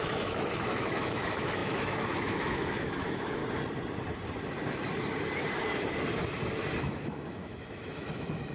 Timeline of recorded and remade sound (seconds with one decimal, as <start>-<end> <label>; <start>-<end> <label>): 0.0-3.4 remade; 3.4-6.8 recorded; 6.8-8.5 remade